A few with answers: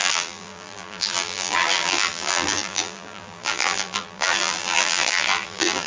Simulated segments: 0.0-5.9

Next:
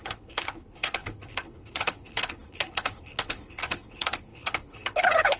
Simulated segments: 0.0-5.4

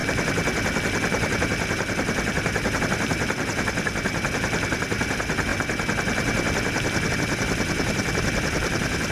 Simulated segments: 2.8-5.5; 7.1-9.1

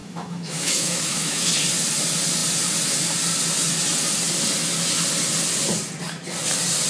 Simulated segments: 0.0-1.5

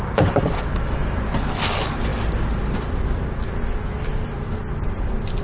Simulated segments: none